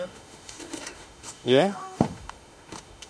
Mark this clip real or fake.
fake